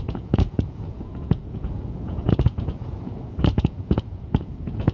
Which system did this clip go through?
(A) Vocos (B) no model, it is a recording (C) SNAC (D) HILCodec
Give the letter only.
A